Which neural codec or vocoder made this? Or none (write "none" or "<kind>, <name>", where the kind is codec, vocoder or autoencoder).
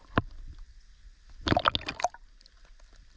none